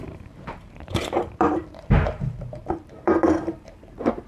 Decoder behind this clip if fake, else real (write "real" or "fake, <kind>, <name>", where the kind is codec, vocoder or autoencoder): fake, vocoder, BigVGAN v2